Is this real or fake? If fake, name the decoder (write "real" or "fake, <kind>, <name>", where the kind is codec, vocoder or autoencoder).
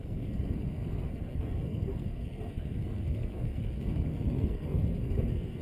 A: fake, codec, SNAC